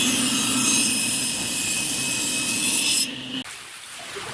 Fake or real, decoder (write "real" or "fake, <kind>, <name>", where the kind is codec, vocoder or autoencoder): real